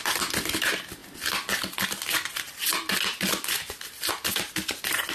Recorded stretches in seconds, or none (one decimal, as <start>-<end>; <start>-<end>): 0.0-5.1